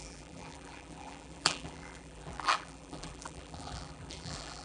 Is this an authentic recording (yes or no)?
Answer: no